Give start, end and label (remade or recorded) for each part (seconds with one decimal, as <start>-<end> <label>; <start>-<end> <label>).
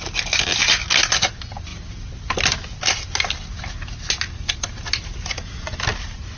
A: 0.0-6.4 recorded